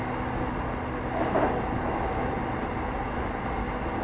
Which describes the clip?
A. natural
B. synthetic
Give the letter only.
A